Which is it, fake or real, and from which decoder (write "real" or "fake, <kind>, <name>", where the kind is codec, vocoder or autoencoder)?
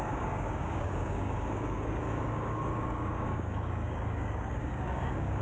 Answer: fake, codec, DAC